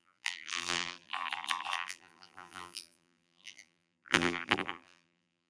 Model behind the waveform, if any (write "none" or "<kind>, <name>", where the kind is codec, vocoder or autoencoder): vocoder, BigVGAN v2